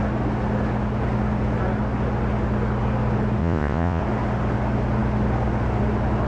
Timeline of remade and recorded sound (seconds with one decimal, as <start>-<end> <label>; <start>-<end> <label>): 0.0-3.4 recorded; 3.4-4.0 remade; 4.0-6.3 recorded